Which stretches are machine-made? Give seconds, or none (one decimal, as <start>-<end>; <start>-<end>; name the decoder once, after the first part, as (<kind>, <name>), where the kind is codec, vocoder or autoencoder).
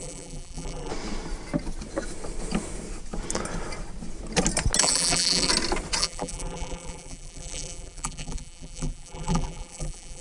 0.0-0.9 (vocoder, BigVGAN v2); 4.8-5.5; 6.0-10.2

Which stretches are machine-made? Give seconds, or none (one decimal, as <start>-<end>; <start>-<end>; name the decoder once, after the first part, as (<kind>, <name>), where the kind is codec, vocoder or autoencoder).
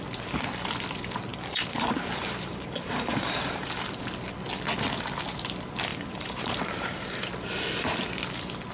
1.3-4.0 (vocoder, BigVGAN v2); 5.9-7.2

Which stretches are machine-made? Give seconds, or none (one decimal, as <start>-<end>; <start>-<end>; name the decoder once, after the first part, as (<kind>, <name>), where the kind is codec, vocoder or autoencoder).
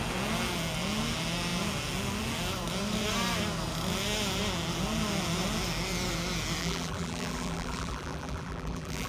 6.6-9.1 (vocoder, BigVGAN v2)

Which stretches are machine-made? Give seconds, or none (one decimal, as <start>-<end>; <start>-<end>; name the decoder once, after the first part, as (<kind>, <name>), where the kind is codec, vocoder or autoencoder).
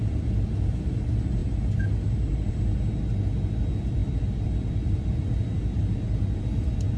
1.4-2.5 (vocoder, BigVGAN v2)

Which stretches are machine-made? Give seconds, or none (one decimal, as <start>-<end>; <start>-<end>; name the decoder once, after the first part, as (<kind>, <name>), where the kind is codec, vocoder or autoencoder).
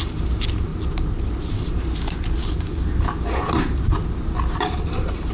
0.0-0.7 (vocoder, BigVGAN v2); 1.5-1.9; 3.3-3.9; 4.6-5.3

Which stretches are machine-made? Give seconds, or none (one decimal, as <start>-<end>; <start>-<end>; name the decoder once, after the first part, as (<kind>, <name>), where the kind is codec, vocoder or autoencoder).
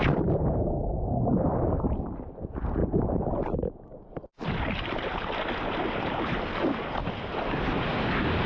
2.8-4.1 (vocoder, BigVGAN v2); 5.8-6.6